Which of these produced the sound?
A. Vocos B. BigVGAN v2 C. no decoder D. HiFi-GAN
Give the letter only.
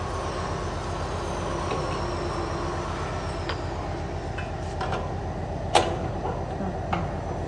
C